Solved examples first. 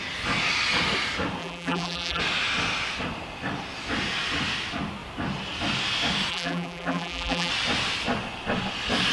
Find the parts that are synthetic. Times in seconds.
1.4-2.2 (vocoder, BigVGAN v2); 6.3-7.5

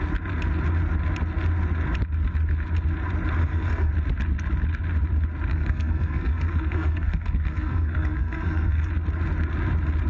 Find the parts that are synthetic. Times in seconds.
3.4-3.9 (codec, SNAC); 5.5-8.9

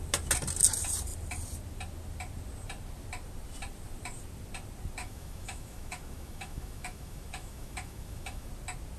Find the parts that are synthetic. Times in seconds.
5.0-8.5 (autoencoder, DAC-VAE)

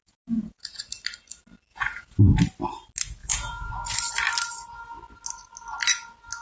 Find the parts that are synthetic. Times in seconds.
0.0-0.8 (vocoder, Vocos); 1.7-2.2; 3.2-3.7

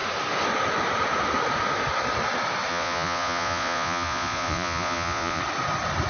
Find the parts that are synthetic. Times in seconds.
2.7-5.4 (vocoder, Vocos)

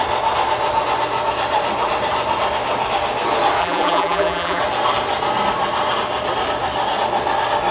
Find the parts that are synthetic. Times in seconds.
3.6-4.6 (vocoder, BigVGAN v2)